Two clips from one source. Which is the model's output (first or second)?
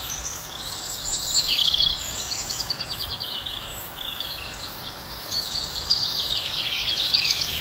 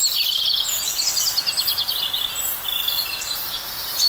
first